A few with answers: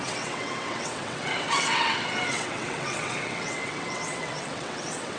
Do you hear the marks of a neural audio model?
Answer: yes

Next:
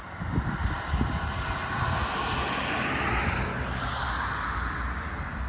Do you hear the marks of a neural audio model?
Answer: no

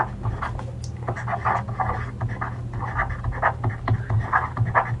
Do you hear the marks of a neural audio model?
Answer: no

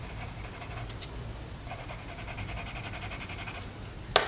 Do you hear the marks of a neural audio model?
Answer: no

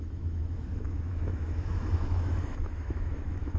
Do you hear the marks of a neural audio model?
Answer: yes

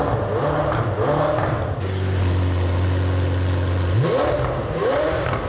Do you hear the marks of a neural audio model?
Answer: no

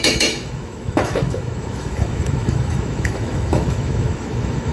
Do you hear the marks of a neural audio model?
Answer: yes